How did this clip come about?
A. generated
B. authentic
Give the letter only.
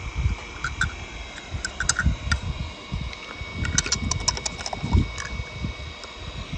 B